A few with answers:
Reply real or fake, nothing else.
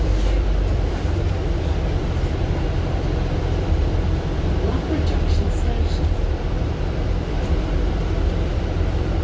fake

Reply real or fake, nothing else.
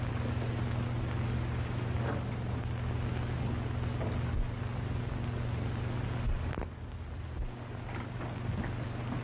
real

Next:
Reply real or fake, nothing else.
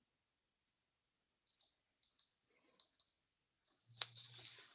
real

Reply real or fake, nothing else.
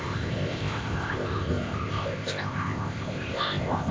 fake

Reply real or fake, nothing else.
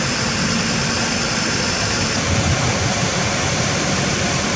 fake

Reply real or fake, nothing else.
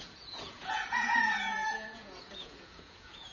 fake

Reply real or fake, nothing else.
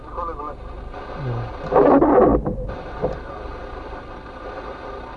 real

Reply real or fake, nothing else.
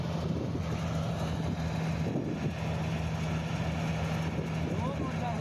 real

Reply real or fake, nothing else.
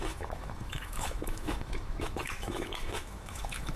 fake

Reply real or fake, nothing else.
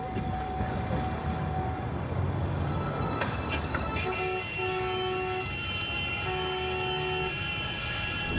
fake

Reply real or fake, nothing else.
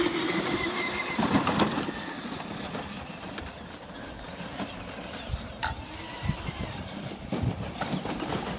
fake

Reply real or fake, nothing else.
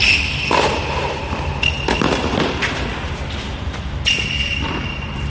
fake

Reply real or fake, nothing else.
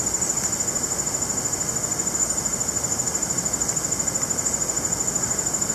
real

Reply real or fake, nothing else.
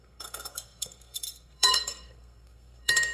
fake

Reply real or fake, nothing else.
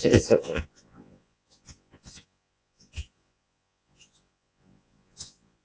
fake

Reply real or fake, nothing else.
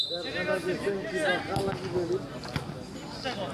real